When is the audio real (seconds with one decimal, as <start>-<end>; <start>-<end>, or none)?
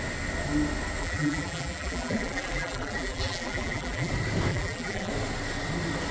0.0-1.0; 4.1-4.5; 5.1-6.1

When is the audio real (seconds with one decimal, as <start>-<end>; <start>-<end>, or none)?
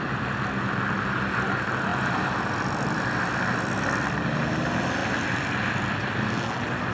0.0-6.9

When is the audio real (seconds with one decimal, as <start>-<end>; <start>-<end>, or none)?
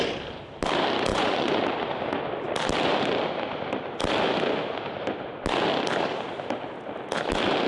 0.0-1.1; 1.6-7.7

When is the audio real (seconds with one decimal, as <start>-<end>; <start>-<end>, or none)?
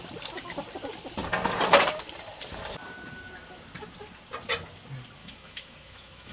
0.0-5.2